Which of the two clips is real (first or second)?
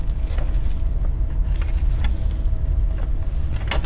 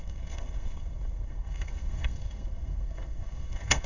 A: first